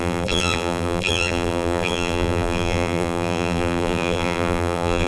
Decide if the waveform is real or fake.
fake